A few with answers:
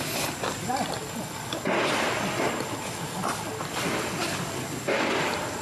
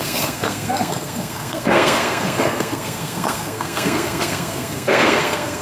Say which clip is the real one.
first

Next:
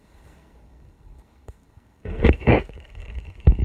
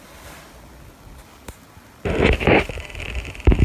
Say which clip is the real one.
second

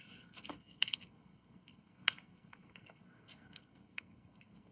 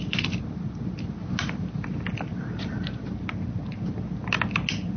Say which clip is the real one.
second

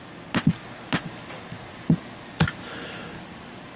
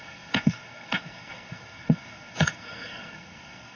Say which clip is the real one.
first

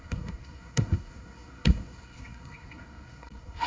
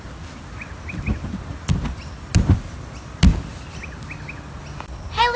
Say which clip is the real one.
second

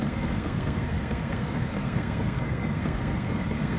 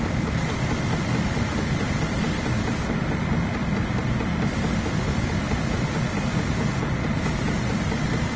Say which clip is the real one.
second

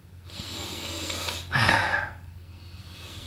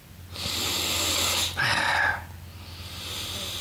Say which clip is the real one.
second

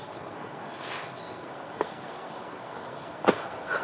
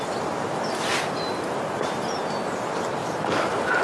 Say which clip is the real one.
second